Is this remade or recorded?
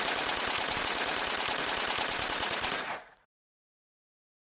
remade